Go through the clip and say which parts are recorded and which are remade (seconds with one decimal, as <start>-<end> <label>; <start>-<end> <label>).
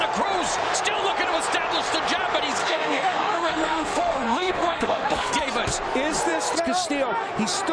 0.0-2.6 recorded; 2.6-5.3 remade; 5.3-7.7 recorded